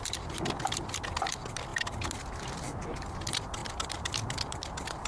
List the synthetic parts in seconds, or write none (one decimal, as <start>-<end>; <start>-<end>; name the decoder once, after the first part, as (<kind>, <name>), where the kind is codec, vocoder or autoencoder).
none

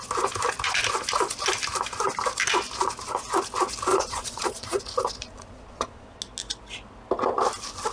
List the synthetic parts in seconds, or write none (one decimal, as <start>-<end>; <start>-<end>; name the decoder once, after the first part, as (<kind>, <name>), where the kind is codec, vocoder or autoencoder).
3.9-4.8 (vocoder, Vocos); 5.2-6.2

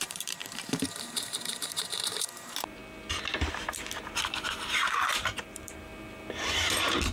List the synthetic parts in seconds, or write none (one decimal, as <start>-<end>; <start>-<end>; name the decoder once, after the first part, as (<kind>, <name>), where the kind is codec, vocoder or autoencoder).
0.0-2.8 (vocoder, BigVGAN v2); 3.5-5.9; 6.5-7.1